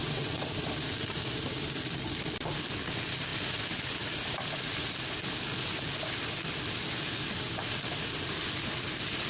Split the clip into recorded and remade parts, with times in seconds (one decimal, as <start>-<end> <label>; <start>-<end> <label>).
0.0-0.5 remade; 0.5-9.3 recorded